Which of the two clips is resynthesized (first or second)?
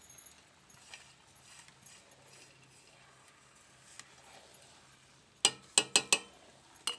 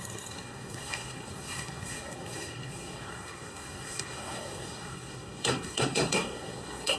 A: second